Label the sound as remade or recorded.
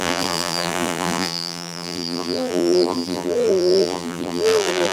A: remade